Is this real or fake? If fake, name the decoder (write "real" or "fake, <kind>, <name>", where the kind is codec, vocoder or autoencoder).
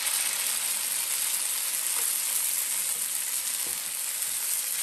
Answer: real